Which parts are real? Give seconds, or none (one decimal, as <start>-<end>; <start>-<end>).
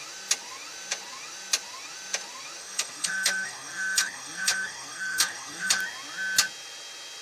0.0-2.6; 5.8-7.2